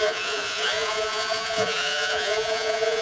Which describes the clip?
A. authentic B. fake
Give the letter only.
B